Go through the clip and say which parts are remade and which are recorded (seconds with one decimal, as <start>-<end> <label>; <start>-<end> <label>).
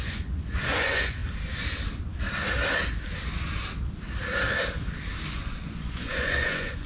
0.0-1.2 remade; 1.2-5.3 recorded; 5.3-6.9 remade